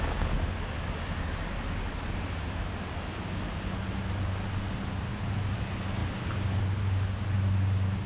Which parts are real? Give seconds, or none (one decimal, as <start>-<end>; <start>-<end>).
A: 0.0-8.1